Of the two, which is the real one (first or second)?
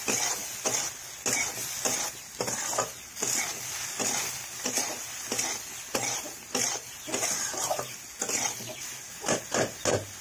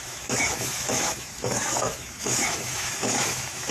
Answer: first